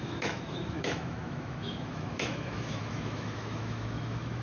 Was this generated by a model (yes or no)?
yes